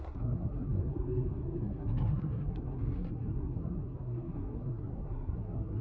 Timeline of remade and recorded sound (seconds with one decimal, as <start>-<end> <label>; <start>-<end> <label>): 0.0-5.8 remade